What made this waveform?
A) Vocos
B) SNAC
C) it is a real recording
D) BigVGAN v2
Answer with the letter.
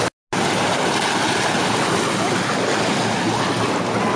C